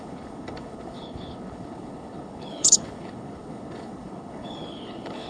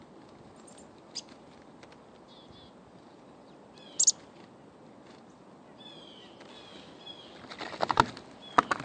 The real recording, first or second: second